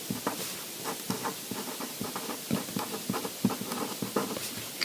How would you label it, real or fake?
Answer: real